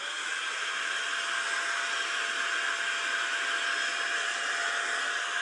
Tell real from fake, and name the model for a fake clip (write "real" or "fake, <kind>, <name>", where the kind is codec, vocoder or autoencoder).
real